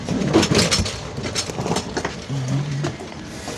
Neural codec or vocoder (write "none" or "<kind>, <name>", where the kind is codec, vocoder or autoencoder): none